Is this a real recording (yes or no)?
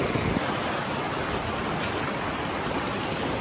yes